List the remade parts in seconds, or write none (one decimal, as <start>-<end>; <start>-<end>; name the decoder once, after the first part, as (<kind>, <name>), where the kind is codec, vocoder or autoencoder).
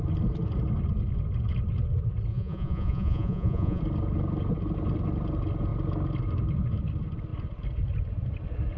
2.3-3.8 (vocoder, Vocos)